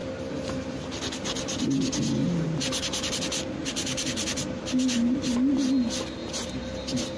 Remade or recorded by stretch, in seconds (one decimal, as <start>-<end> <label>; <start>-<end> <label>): 0.0-2.2 recorded; 2.2-3.1 remade; 3.1-3.6 recorded; 3.6-5.0 remade; 5.0-6.2 recorded; 6.2-7.2 remade